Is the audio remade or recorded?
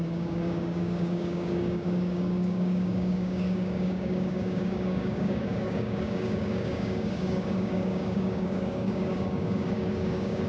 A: remade